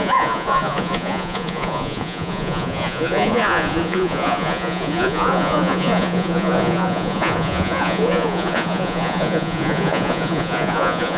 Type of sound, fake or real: fake